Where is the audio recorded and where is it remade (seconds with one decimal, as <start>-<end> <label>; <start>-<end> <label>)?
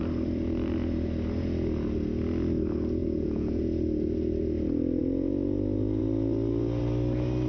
0.0-3.0 recorded; 3.0-3.6 remade; 3.6-7.5 recorded